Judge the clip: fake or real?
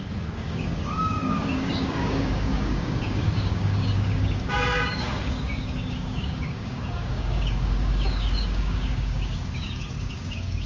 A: fake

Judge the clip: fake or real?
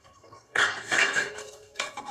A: fake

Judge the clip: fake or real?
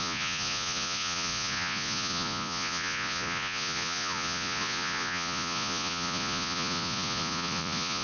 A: fake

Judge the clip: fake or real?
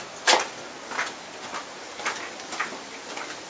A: real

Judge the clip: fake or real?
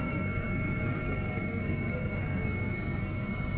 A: fake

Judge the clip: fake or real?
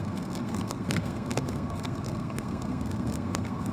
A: fake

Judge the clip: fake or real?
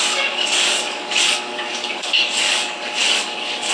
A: fake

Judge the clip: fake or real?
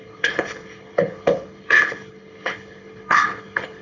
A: fake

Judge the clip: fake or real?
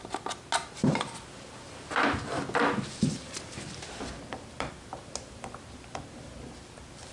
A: real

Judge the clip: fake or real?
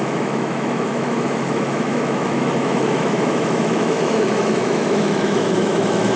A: fake